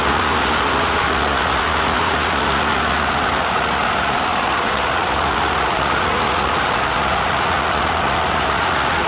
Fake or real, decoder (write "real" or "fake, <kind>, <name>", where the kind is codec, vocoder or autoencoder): fake, vocoder, Vocos